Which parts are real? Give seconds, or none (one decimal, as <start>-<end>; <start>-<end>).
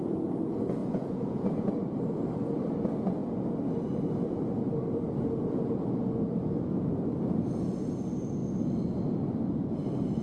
0.0-0.8; 1.7-10.2